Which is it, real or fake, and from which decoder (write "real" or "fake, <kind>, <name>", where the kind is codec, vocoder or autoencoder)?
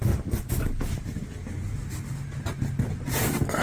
real